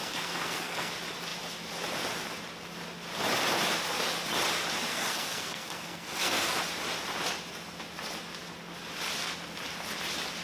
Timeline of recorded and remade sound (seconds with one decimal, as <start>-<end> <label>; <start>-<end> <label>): 0.0-0.9 remade; 0.9-4.9 recorded; 4.9-6.6 remade; 6.6-10.4 recorded

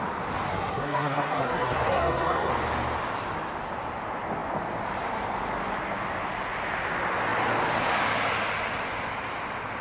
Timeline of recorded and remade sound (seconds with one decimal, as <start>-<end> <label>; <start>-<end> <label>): 0.0-0.5 recorded; 0.5-2.5 remade; 2.5-9.8 recorded

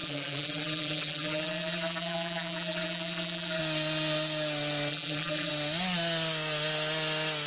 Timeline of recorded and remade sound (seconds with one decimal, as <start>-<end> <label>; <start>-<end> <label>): 0.0-3.6 remade; 3.6-4.9 recorded; 4.9-5.5 remade; 5.5-7.5 recorded

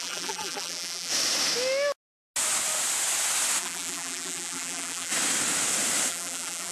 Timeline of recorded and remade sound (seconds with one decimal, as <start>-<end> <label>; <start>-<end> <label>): 0.0-1.1 remade; 1.1-3.6 recorded; 3.6-5.1 remade; 5.1-6.1 recorded; 6.1-6.7 remade

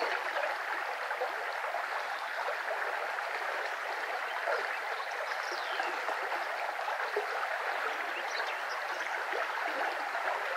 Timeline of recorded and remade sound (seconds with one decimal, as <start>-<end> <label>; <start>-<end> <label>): 0.0-10.6 recorded

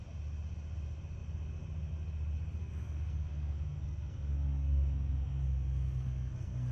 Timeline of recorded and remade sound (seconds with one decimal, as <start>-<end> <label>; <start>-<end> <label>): 0.0-2.6 recorded; 2.6-6.7 remade

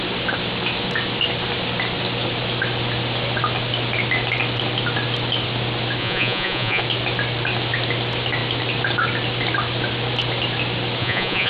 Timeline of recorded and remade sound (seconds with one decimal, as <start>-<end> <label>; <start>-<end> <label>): 0.0-6.0 recorded; 6.0-6.8 remade; 6.8-11.0 recorded; 11.0-11.5 remade

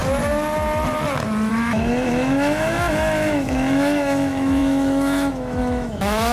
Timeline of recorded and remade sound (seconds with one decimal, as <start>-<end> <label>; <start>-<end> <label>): 0.0-1.5 recorded; 1.5-6.3 remade